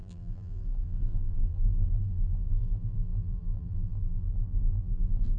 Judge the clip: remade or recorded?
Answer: remade